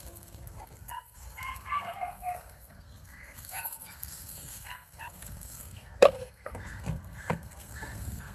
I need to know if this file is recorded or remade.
remade